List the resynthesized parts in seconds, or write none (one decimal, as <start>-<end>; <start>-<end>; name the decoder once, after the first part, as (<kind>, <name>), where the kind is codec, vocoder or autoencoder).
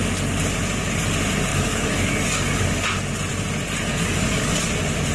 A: 1.5-2.7 (codec, DAC); 3.9-4.6